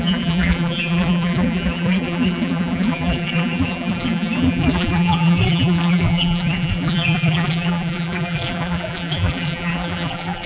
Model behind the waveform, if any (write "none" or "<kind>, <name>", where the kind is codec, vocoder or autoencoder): vocoder, BigVGAN v2